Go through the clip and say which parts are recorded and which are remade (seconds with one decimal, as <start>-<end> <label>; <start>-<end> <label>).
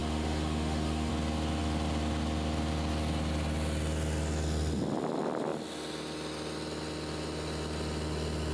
0.0-1.1 remade; 1.1-8.5 recorded